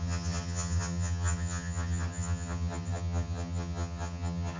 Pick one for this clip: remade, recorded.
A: remade